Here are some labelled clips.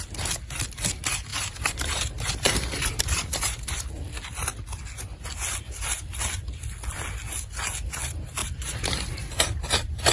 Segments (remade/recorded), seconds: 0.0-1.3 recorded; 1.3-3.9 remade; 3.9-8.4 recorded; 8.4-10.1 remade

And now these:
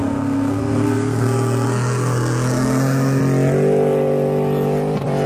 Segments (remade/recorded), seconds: 0.0-3.2 remade; 3.2-5.3 recorded